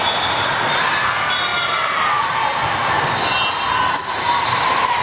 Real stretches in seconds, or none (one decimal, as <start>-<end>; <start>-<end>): 0.0-5.0